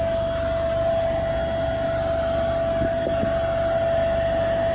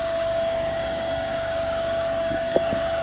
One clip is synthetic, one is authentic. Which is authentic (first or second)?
first